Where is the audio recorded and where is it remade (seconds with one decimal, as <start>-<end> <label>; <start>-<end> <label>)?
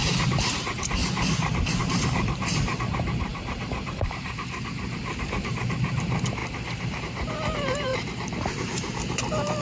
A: 0.0-1.0 remade; 1.0-1.8 recorded; 1.8-6.4 remade; 6.4-7.0 recorded; 7.0-9.6 remade